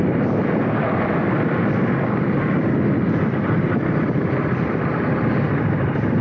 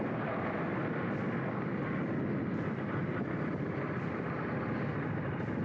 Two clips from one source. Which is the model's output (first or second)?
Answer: first